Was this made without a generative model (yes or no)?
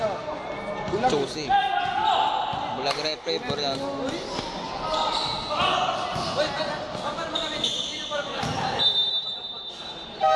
yes